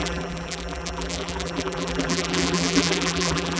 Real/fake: fake